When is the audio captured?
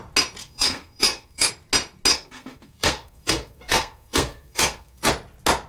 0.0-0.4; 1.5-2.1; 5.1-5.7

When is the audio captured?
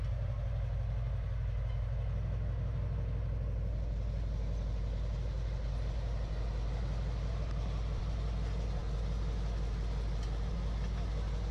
0.0-11.5